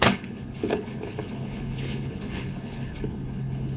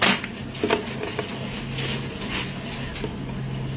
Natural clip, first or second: second